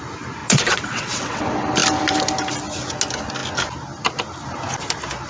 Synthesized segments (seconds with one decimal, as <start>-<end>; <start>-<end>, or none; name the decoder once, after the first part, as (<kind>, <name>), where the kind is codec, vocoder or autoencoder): 0.4-1.4 (vocoder, WaveNeXt)